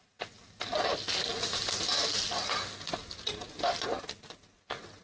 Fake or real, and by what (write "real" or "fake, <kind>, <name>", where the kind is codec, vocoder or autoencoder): real